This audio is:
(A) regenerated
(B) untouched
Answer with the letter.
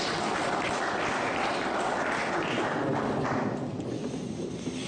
B